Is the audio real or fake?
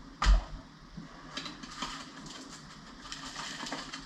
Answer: real